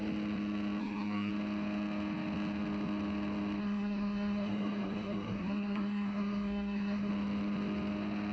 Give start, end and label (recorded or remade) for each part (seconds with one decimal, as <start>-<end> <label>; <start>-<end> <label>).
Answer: 0.0-0.8 recorded; 0.8-1.3 remade; 1.3-3.6 recorded; 3.6-7.1 remade; 7.1-8.3 recorded